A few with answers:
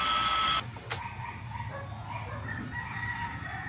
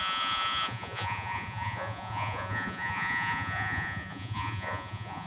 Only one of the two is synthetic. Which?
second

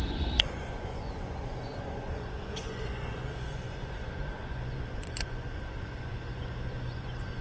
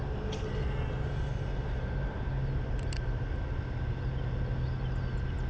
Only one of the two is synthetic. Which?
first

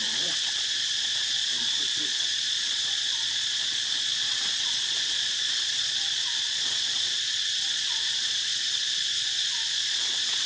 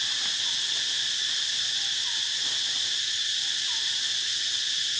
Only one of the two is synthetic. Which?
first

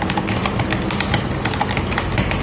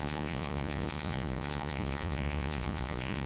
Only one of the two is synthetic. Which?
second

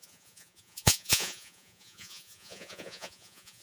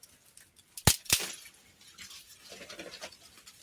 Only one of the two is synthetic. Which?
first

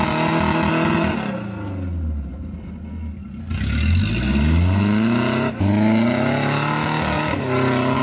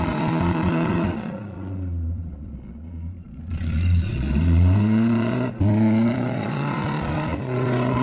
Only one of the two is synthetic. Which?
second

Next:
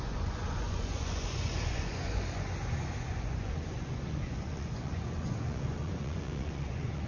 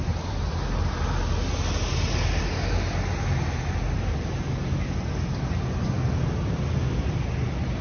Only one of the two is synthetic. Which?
first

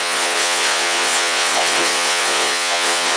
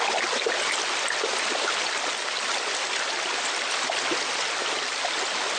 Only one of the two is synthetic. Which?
first